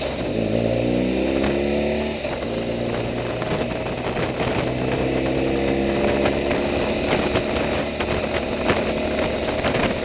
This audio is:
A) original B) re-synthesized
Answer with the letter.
A